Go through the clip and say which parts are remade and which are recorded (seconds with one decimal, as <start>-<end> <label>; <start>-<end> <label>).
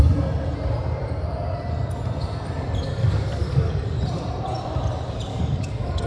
0.0-3.0 recorded; 3.0-3.7 remade; 3.7-5.3 recorded; 5.3-6.1 remade